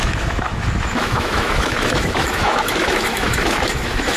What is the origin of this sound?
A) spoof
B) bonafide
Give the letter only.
A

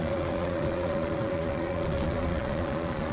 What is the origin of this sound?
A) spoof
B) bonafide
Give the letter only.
A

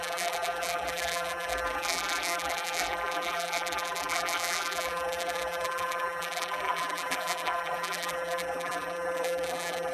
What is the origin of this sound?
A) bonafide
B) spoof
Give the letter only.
B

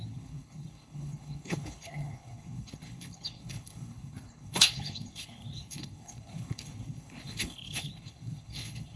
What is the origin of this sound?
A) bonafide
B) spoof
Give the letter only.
B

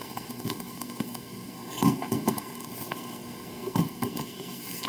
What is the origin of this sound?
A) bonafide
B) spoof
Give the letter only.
B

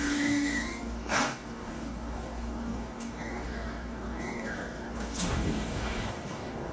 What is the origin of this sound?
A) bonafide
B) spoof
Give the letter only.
B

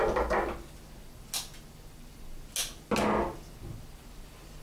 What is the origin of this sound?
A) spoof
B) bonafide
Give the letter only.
B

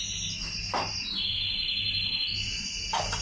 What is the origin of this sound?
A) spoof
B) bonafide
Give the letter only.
B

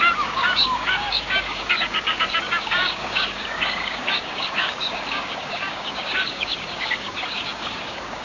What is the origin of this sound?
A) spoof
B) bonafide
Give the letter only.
A